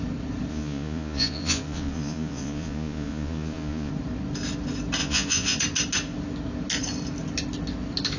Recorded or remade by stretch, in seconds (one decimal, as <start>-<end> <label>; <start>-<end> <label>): 0.0-0.5 recorded; 0.5-3.9 remade; 3.9-5.0 recorded; 5.0-5.6 remade; 5.6-8.2 recorded